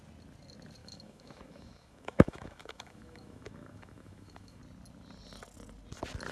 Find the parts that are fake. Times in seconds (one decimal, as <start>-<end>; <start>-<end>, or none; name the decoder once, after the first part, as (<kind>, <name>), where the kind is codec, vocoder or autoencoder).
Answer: 0.8-4.6 (autoencoder, DAC-VAE)